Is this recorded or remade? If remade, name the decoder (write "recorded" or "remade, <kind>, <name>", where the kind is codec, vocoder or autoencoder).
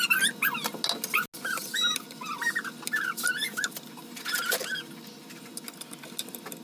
recorded